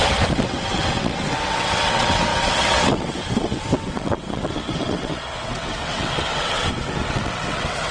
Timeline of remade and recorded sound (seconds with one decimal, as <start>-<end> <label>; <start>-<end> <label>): 0.0-7.9 remade